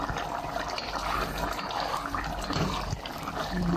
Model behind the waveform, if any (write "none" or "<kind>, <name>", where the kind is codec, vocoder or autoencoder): none